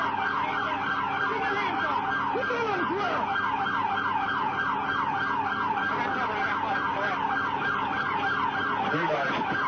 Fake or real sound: real